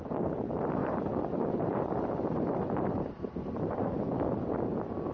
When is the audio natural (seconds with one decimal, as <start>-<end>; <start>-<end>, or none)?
0.0-0.8; 3.9-5.1